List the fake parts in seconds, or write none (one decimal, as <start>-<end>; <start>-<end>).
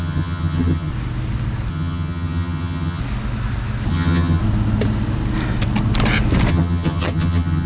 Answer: 0.0-0.9; 1.7-3.0; 3.9-4.4; 6.5-7.7